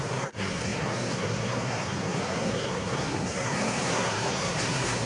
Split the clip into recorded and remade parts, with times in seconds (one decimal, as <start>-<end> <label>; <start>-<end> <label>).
0.0-5.1 remade